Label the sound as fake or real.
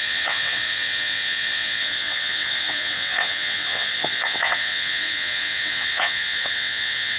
fake